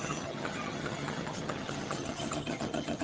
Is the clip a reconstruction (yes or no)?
yes